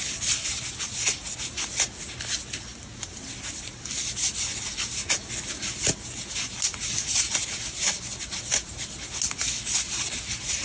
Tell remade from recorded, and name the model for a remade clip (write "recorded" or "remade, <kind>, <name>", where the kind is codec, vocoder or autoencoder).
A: recorded